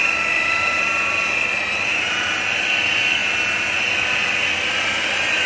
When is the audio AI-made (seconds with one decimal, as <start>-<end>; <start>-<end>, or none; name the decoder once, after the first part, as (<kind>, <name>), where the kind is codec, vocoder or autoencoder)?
none